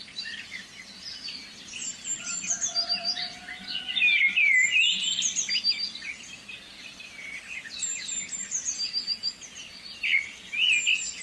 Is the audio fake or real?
real